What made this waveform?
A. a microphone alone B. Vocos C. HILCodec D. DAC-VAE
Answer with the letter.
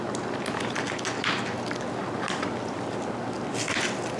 A